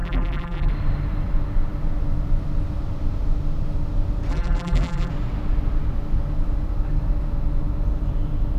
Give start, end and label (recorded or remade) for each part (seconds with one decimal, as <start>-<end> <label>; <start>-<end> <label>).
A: 0.0-0.7 remade; 0.7-4.3 recorded; 4.3-5.1 remade; 5.1-8.6 recorded